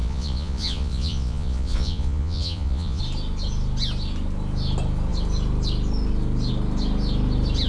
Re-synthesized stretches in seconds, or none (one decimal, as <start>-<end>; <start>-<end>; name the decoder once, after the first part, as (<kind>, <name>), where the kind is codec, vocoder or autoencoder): 0.0-3.0 (vocoder, Vocos)